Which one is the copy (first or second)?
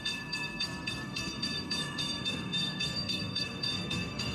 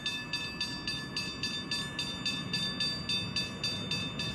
first